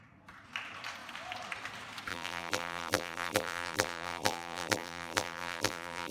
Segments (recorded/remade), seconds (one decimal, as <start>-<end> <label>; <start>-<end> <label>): 0.0-2.1 recorded; 2.1-6.1 remade

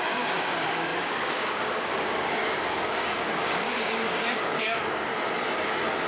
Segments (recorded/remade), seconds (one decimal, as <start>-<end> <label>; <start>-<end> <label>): 0.0-5.1 remade; 5.1-6.1 recorded